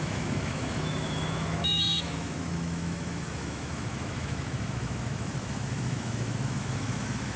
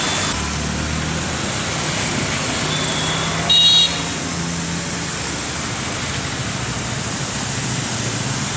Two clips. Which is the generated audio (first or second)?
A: first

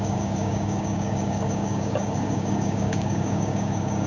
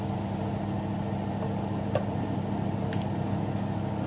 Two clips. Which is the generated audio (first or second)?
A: first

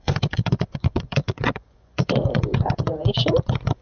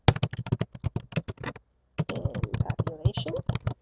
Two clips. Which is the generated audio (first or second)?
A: first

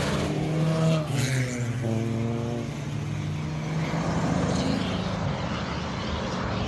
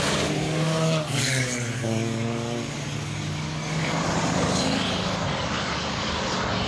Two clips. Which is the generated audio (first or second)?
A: second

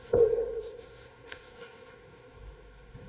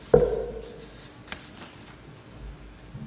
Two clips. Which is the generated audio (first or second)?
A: first